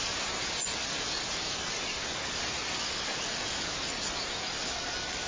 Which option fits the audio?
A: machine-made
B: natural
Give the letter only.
B